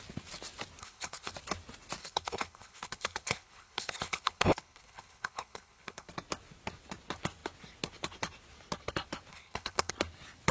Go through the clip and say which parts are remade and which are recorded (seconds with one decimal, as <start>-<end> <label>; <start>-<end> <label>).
0.0-0.8 recorded; 0.8-1.3 remade; 1.3-2.0 recorded; 2.0-6.1 remade; 6.1-9.3 recorded; 9.3-9.9 remade; 9.9-10.5 recorded